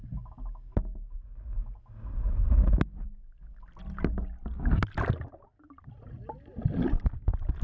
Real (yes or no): yes